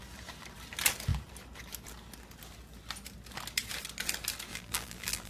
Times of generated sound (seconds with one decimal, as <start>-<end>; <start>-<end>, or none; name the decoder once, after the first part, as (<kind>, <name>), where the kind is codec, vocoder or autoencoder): 4.5-5.3 (vocoder, BigVGAN v2)